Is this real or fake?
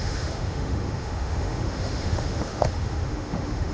fake